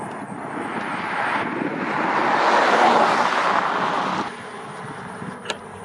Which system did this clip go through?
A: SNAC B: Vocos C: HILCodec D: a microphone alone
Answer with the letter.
D